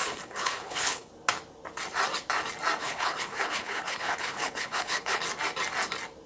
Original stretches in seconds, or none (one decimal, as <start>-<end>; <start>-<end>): 1.1-2.8; 5.2-6.3